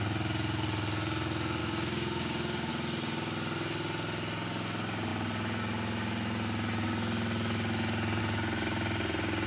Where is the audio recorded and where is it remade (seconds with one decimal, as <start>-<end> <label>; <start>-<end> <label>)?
0.0-1.6 recorded; 1.6-2.7 remade; 2.7-9.5 recorded